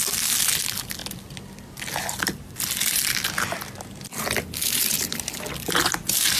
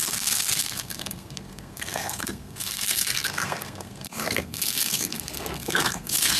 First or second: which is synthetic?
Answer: second